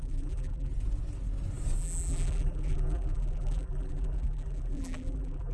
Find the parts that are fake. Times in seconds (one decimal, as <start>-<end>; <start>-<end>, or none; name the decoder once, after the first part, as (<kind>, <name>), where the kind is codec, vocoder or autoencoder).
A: 0.0-0.7 (vocoder, BigVGAN v2); 1.8-5.5